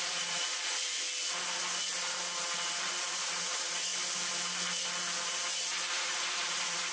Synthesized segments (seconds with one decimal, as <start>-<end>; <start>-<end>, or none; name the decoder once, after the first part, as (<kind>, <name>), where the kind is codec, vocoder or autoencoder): 0.0-0.9 (vocoder, Vocos); 3.1-3.9; 5.9-6.9